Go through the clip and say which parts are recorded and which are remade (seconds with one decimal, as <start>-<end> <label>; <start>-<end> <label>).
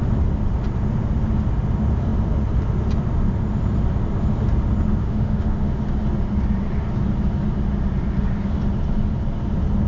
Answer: 0.0-5.0 recorded; 5.0-5.8 remade; 5.8-9.9 recorded